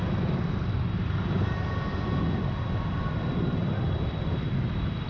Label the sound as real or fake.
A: real